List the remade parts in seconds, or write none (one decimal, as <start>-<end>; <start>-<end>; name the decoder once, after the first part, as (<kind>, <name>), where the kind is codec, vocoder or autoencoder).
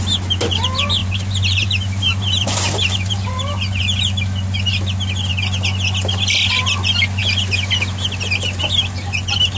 1.0-3.8 (vocoder, BigVGAN v2)